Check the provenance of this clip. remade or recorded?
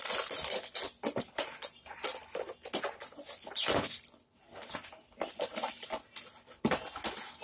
recorded